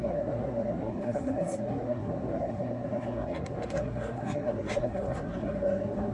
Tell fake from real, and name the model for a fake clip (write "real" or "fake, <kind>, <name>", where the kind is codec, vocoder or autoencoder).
fake, codec, SNAC